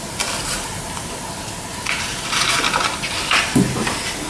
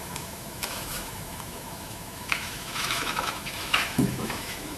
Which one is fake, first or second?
second